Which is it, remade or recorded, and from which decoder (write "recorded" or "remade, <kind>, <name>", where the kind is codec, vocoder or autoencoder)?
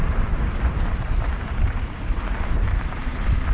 remade, vocoder, BigVGAN v2